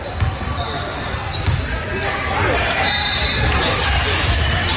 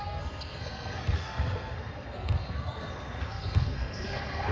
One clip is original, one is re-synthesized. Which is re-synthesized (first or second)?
second